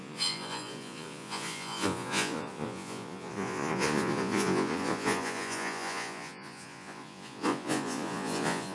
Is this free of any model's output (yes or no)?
no